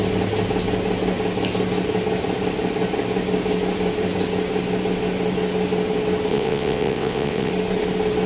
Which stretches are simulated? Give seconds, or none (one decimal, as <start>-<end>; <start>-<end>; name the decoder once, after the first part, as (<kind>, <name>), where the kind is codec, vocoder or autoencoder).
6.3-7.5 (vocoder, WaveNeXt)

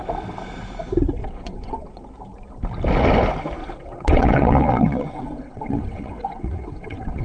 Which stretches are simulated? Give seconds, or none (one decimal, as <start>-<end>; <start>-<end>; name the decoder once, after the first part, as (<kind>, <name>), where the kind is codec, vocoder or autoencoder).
1.2-2.0 (vocoder, WaveNeXt); 3.6-7.2

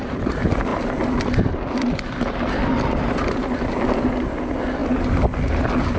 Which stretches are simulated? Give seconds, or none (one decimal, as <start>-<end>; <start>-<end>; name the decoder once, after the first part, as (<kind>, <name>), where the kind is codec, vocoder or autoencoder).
none

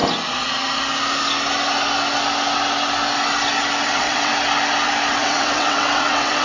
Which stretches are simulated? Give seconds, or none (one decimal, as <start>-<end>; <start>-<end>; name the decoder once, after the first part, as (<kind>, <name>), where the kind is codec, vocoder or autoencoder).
3.8-4.3 (vocoder, WaveNeXt); 5.1-6.4

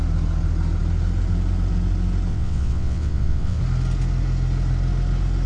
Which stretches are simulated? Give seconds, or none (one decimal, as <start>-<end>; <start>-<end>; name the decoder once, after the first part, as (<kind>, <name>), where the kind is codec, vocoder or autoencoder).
2.3-3.6 (vocoder, WaveNeXt)